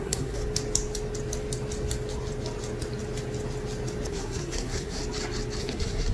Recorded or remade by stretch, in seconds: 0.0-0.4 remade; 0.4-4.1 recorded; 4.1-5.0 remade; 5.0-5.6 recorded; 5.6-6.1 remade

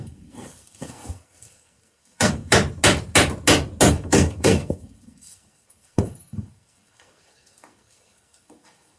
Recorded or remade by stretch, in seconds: 0.0-2.5 remade; 2.5-3.9 recorded; 3.9-9.0 remade

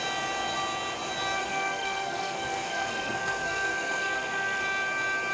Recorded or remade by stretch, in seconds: 0.0-1.4 recorded; 1.4-4.6 remade; 4.6-5.3 recorded

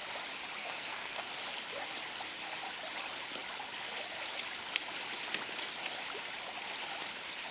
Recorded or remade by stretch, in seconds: 0.0-0.6 recorded; 0.6-1.3 remade; 1.3-7.5 recorded